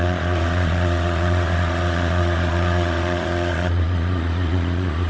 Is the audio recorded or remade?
remade